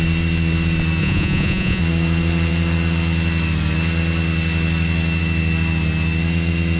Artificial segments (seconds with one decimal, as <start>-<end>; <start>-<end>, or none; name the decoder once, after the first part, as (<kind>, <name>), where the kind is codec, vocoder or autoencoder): 1.0-1.8 (vocoder, Vocos)